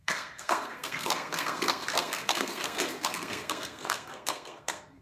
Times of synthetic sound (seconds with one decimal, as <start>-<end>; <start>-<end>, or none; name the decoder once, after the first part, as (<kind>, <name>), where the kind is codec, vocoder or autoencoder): 0.0-5.0 (codec, SNAC)